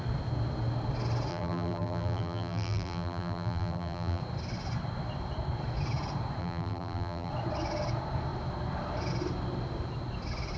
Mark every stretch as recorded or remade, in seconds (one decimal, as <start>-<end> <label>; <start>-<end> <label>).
0.0-1.3 recorded; 1.3-4.2 remade; 4.2-6.4 recorded; 6.4-7.3 remade; 7.3-10.6 recorded

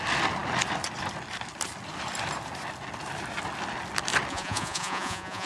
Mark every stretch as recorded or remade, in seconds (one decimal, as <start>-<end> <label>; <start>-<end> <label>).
0.0-4.3 recorded; 4.3-5.5 remade